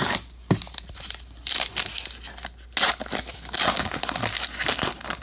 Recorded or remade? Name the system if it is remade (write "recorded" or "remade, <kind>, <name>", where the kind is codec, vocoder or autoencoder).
recorded